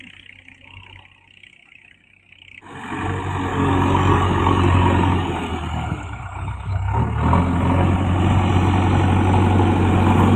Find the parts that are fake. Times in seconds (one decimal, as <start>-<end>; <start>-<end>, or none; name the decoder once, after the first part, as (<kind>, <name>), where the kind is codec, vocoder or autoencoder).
3.5-7.0 (codec, DAC)